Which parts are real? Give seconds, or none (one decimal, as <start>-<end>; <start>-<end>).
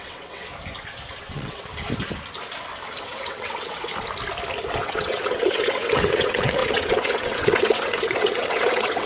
0.5-1.2; 1.7-3.0; 3.9-4.8